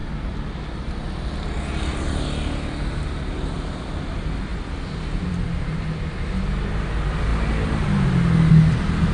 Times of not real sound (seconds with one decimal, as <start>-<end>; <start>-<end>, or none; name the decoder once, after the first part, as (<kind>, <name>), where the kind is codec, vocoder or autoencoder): none